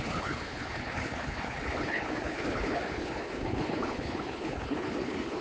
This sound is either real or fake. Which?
fake